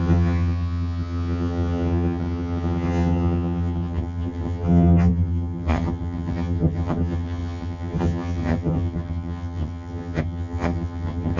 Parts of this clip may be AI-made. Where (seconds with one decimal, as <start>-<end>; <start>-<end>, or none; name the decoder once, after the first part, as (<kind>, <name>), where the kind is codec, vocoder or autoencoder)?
0.0-11.4 (vocoder, HiFi-GAN)